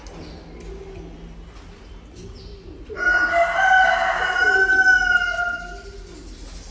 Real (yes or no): yes